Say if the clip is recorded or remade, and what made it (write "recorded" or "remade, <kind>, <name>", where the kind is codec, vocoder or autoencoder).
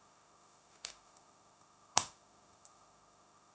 remade, autoencoder, DAC-VAE